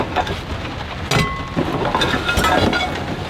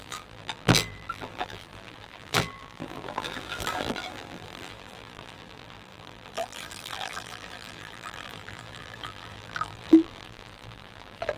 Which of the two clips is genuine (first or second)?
first